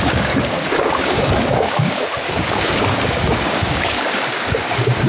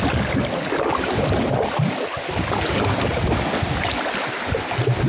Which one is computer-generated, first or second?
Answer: first